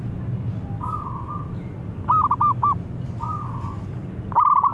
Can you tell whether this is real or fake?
real